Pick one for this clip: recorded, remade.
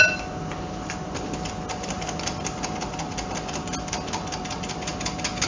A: recorded